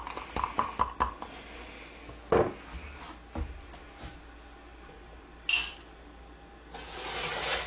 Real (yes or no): yes